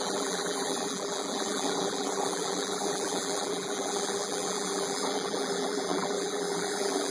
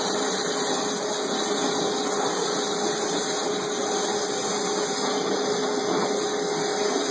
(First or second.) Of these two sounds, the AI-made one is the first